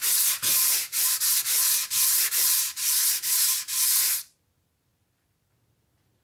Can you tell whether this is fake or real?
real